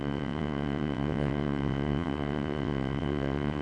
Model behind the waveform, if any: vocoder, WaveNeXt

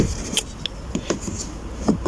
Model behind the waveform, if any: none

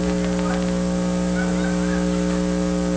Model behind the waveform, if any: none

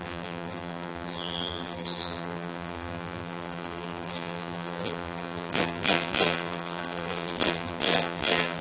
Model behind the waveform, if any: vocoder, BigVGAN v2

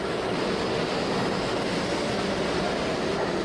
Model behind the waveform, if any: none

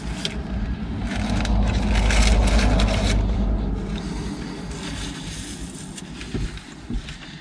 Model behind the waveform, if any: none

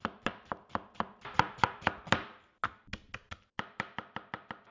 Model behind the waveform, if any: none